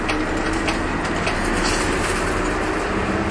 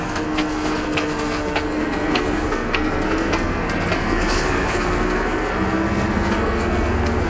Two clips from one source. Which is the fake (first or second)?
second